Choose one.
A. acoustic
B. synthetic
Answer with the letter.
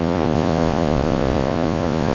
B